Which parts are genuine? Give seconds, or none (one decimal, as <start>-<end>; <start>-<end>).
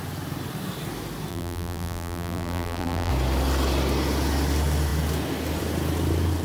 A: 0.0-1.3; 3.1-6.4